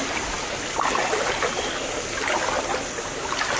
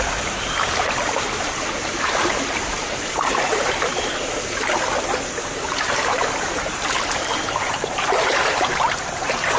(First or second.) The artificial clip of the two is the second